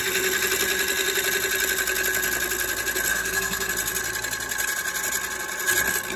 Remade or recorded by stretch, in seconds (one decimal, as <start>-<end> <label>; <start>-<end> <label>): 0.0-3.1 recorded; 3.1-3.7 remade; 3.7-6.2 recorded